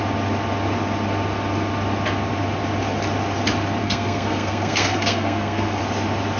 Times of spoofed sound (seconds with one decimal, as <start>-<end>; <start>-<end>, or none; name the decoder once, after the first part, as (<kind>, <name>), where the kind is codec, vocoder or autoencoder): 3.8-5.8 (codec, SNAC)